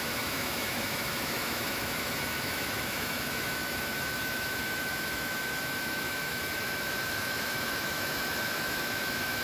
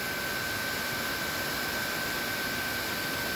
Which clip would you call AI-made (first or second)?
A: first